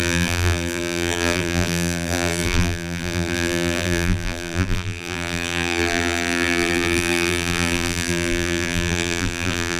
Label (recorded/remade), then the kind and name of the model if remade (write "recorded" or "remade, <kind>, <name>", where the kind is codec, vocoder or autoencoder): remade, vocoder, BigVGAN v2